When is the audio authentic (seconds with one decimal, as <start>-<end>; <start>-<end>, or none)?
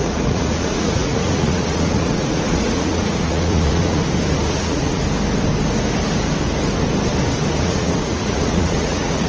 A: 4.0-4.5; 5.0-7.6